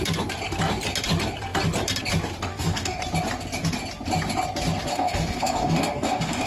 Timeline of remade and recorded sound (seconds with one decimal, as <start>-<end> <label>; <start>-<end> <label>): 0.0-2.5 recorded; 2.5-3.0 remade; 3.0-4.9 recorded; 4.9-6.5 remade